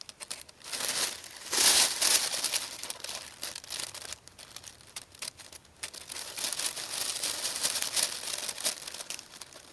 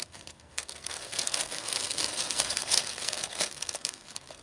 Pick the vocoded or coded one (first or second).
second